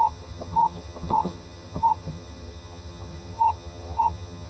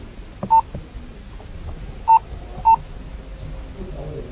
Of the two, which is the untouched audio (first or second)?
second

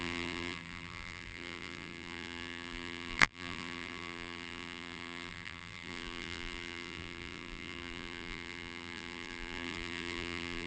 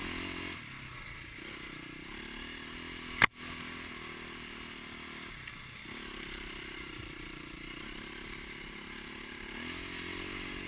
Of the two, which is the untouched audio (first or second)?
second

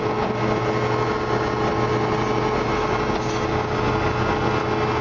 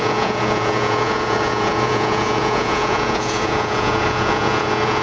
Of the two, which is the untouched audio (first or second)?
first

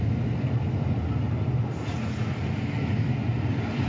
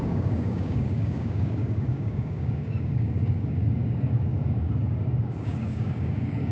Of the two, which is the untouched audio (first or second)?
first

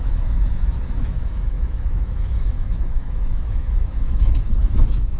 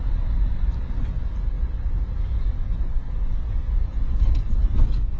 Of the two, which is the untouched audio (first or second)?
second